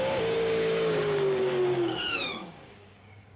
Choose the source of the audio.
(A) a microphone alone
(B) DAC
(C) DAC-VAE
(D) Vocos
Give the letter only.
B